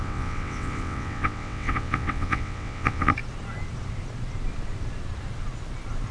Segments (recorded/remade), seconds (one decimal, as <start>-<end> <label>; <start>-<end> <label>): 0.0-3.1 remade; 3.1-6.1 recorded